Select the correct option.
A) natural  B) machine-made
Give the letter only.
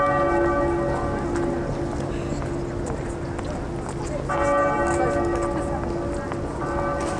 A